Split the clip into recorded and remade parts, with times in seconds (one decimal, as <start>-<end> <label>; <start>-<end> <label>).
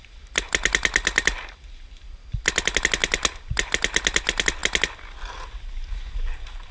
0.0-6.7 recorded